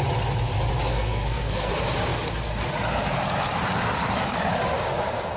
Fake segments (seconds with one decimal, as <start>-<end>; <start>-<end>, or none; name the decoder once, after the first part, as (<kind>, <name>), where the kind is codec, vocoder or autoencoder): 0.9-1.7 (codec, SNAC)